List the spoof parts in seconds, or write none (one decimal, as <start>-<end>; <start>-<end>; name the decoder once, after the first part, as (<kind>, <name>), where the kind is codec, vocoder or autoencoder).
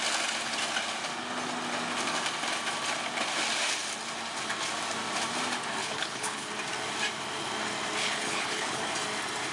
5.8-6.5 (codec, HILCodec); 8.0-8.8